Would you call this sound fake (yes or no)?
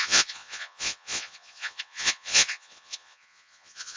yes